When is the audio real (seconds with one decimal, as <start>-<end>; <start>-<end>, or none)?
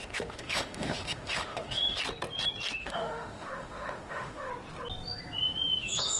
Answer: 2.0-2.8; 4.5-5.8